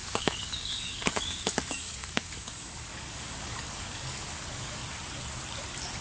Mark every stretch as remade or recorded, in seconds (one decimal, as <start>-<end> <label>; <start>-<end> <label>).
0.0-4.8 remade; 4.8-6.0 recorded